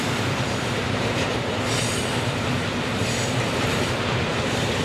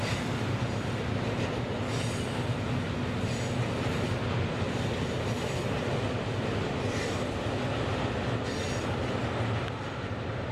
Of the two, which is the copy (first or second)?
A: first